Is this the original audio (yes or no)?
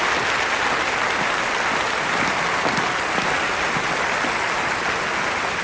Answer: yes